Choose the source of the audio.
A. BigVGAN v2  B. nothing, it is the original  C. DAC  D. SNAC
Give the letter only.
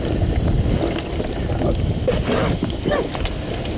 B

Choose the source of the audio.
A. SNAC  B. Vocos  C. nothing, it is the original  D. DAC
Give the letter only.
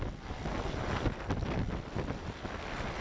C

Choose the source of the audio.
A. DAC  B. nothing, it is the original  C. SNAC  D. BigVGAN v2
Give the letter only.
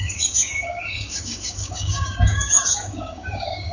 A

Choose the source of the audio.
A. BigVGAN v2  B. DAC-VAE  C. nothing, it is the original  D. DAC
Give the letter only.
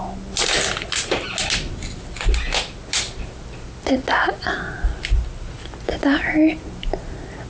C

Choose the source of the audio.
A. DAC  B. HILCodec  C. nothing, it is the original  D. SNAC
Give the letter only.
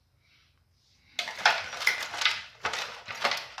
C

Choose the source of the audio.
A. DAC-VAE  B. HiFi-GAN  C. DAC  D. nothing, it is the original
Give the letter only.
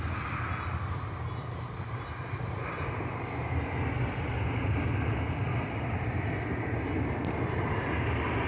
D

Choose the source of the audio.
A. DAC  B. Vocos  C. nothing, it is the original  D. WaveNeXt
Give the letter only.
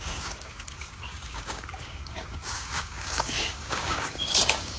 A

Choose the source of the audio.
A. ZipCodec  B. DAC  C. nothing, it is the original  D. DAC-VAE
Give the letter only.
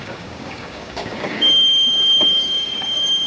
B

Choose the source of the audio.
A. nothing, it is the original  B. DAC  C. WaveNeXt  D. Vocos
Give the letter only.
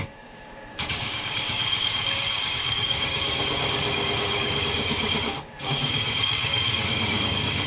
B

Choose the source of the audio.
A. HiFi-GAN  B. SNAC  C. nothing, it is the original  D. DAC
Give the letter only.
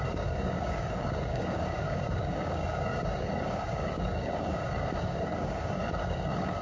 D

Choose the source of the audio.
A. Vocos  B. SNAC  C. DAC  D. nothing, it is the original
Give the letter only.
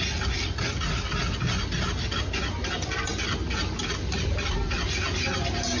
D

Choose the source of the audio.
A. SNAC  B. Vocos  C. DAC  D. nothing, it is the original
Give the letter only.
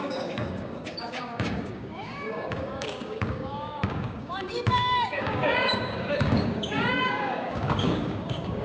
C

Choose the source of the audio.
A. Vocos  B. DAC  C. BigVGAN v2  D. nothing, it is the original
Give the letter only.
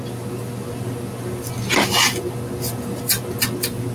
D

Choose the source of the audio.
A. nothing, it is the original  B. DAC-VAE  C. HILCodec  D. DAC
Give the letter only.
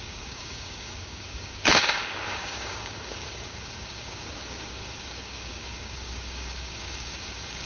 D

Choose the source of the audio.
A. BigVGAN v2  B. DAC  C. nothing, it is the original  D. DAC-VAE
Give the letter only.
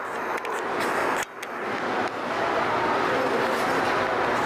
C